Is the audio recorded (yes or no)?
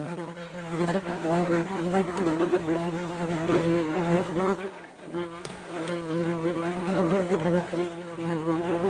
no